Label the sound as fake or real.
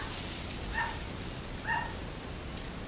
fake